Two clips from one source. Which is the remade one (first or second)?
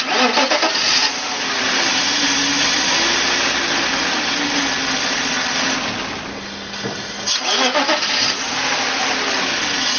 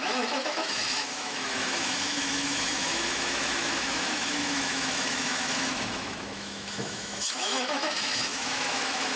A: second